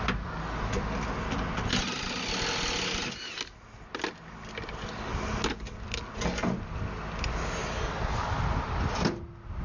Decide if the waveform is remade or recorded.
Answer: recorded